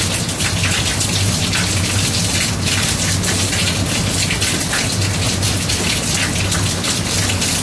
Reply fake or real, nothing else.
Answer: real